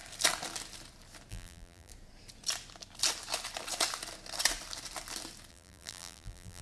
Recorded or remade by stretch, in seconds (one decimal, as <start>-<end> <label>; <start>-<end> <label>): 0.0-1.3 recorded; 1.3-1.9 remade; 1.9-5.5 recorded; 5.5-6.6 remade

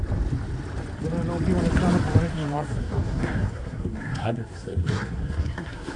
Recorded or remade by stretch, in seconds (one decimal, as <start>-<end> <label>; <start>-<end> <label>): 0.0-2.3 recorded; 2.3-6.0 remade

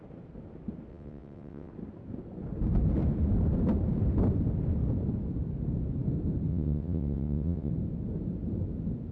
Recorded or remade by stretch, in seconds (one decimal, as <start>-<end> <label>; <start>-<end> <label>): 0.0-0.9 recorded; 0.9-1.7 remade; 1.7-6.5 recorded; 6.5-7.7 remade; 7.7-9.1 recorded